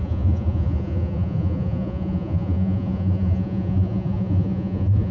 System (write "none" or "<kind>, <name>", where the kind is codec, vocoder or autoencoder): vocoder, Vocos